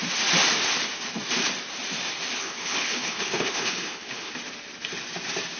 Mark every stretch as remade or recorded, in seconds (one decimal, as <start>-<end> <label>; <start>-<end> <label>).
0.0-2.4 recorded; 2.4-4.3 remade; 4.3-5.6 recorded